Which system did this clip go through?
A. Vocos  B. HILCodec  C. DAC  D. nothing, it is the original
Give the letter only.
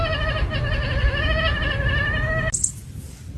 D